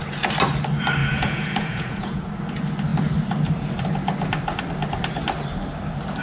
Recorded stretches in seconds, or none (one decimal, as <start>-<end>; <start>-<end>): 0.0-1.0; 2.3-6.2